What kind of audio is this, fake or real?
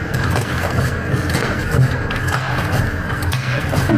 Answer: fake